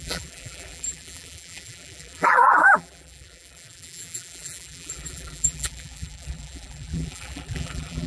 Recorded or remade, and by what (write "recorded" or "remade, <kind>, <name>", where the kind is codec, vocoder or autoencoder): remade, vocoder, BigVGAN v2